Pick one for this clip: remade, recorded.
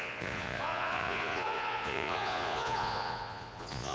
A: remade